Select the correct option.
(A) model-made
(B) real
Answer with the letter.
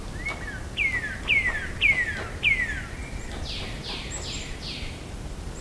B